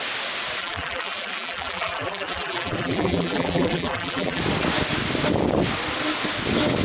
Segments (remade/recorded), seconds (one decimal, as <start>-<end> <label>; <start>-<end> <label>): 0.0-0.6 recorded; 0.6-4.4 remade; 4.4-6.8 recorded